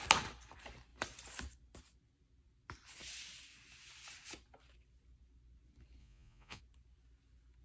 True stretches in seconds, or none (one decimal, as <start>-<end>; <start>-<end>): 0.0-6.0; 6.6-7.6